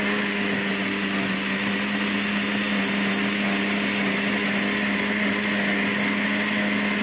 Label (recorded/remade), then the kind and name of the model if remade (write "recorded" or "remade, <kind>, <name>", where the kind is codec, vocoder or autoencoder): recorded